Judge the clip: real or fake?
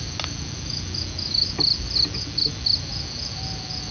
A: real